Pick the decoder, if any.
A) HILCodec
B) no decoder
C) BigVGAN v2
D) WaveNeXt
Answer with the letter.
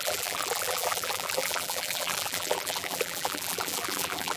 C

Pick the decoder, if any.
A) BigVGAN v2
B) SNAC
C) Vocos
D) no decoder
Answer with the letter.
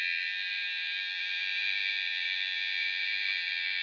A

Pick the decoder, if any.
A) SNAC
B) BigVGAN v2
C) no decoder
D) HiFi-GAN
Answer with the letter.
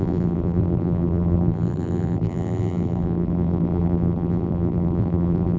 B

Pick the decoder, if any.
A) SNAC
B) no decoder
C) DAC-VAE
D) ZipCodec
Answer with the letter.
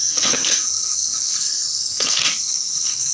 A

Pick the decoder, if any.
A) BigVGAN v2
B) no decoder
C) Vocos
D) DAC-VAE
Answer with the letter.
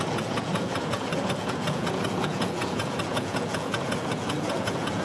C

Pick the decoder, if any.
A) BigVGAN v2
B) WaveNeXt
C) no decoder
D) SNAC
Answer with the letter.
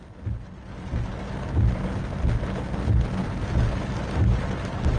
C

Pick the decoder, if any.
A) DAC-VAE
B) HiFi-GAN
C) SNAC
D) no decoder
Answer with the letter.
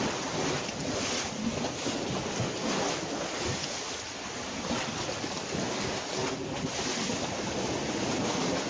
D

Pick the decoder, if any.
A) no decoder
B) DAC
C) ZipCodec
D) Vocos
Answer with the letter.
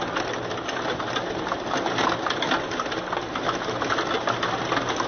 A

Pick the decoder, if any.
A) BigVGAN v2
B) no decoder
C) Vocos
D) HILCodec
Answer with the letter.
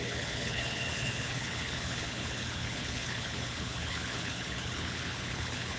D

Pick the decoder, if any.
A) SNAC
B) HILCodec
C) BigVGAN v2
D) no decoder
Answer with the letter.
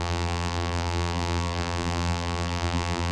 C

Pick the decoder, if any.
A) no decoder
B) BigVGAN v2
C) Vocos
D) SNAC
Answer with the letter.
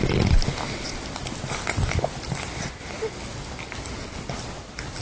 A